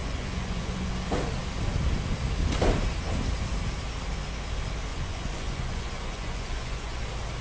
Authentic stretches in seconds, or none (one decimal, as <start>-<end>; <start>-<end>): 0.9-4.9; 7.0-7.4